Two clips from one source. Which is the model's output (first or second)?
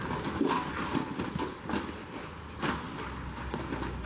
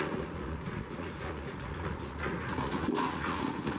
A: second